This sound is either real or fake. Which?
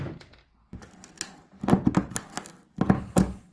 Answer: real